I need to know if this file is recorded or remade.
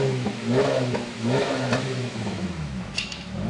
remade